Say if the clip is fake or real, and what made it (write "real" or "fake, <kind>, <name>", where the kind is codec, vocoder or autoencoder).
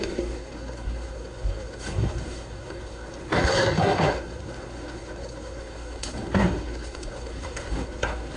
fake, codec, SNAC